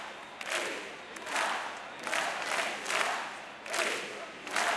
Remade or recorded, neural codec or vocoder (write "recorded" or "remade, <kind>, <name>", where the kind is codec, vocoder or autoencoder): recorded